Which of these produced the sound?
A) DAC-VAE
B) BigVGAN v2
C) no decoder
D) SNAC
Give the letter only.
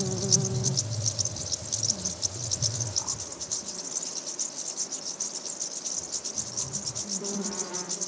C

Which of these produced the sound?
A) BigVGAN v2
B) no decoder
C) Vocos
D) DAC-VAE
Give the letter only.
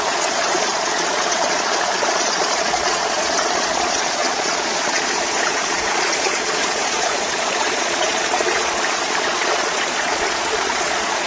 C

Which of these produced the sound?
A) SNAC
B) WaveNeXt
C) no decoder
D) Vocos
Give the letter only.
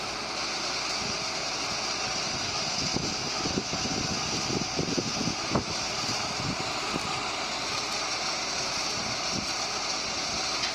C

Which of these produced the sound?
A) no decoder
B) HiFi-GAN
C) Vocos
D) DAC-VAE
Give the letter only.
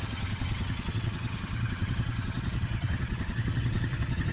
B